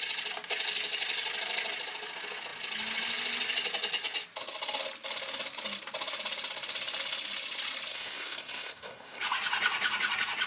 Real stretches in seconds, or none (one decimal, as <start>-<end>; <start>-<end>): 0.0-7.9; 9.2-10.5